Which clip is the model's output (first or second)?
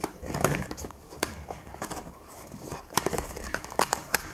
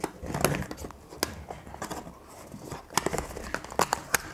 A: first